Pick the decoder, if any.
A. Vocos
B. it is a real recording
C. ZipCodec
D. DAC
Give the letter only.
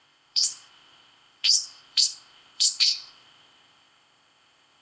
C